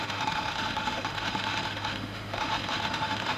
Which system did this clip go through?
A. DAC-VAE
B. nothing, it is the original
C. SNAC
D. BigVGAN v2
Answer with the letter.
A